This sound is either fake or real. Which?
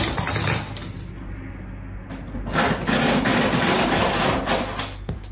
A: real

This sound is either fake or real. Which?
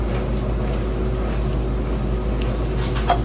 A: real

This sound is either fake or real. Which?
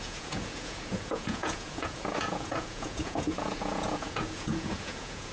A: fake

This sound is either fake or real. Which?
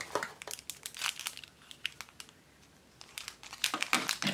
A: real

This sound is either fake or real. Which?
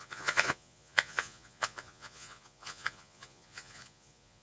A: fake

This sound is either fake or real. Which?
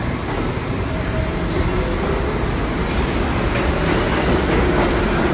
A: real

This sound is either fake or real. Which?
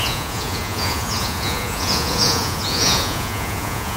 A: fake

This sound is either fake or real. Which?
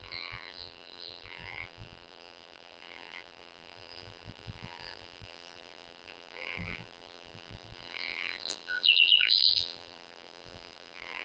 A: fake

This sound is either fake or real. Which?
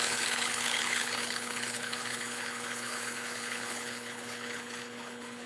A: fake